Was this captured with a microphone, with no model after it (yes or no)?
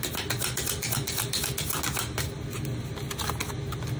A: yes